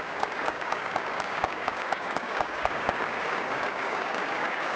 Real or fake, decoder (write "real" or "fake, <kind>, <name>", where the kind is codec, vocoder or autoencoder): fake, codec, DAC